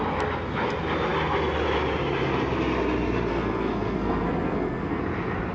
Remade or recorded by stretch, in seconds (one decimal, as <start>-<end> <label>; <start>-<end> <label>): 0.0-3.3 recorded; 3.3-5.0 remade; 5.0-5.5 recorded